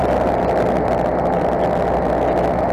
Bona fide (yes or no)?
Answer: yes